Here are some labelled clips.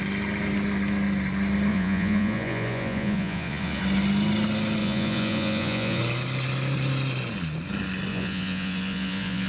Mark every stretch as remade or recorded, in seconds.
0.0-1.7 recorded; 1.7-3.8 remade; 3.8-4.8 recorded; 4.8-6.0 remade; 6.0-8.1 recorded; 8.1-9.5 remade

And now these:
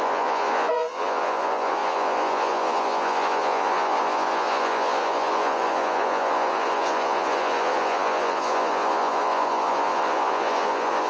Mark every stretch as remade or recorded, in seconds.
0.0-11.1 remade